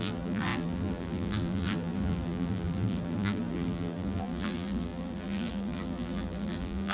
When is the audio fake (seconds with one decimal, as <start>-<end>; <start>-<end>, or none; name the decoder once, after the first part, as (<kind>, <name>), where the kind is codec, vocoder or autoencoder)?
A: 0.0-6.9 (vocoder, BigVGAN v2)